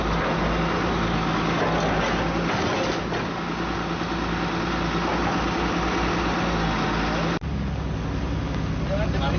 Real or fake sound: real